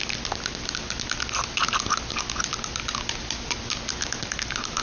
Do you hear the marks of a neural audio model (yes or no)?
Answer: no